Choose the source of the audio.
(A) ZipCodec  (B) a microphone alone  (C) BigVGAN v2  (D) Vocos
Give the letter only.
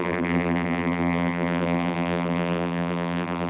C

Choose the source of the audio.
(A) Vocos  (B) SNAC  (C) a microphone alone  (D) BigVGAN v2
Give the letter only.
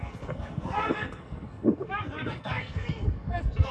B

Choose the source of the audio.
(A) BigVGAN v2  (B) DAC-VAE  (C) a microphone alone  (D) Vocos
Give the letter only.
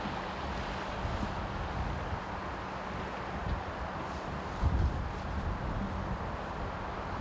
C